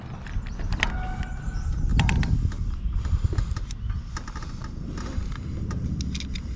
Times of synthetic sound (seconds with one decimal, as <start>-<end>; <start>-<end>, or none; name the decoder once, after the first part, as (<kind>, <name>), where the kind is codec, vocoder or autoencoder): none

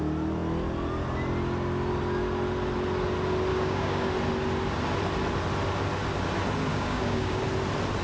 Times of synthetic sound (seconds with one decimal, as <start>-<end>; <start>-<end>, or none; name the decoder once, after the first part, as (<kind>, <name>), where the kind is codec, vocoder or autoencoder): 3.5-4.1 (codec, DAC); 6.7-7.4

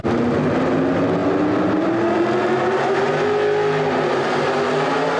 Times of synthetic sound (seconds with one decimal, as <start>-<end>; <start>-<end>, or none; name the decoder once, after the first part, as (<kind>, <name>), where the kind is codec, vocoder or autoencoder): none

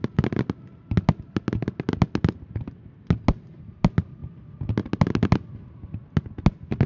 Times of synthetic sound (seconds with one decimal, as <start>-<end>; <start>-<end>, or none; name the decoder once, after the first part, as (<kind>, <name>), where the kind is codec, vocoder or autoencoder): none